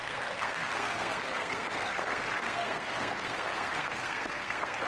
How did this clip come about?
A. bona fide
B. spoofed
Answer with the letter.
B